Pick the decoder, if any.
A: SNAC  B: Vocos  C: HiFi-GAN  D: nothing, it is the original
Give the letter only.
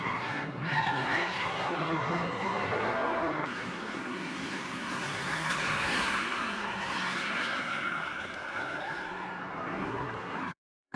A